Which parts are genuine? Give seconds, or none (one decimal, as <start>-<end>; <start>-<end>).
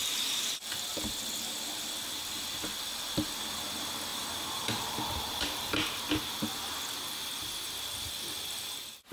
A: 0.6-4.1; 6.0-9.1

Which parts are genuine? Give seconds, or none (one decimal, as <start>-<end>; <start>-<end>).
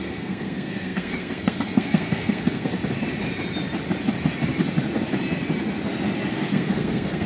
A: 2.7-6.3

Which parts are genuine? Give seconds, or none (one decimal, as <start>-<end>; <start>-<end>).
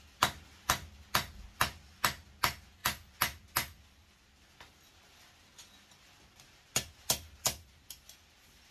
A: 0.0-8.7